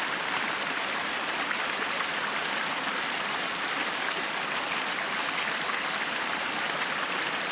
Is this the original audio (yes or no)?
yes